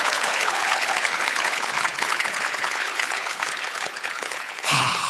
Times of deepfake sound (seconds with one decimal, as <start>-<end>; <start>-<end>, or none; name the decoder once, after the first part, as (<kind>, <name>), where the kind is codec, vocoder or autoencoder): 0.0-5.1 (codec, HILCodec)